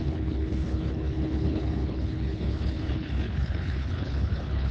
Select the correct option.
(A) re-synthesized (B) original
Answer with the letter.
A